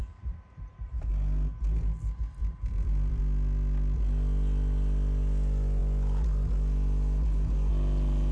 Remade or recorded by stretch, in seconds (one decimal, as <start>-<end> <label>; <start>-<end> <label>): 0.0-1.1 remade; 1.1-2.4 recorded; 2.4-3.2 remade; 3.2-8.3 recorded